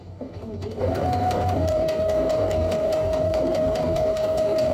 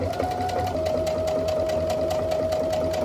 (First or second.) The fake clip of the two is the first